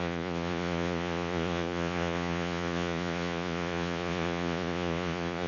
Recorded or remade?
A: remade